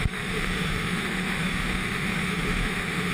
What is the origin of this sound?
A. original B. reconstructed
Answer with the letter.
B